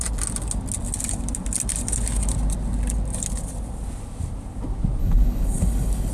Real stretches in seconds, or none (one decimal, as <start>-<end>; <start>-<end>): 0.0-5.0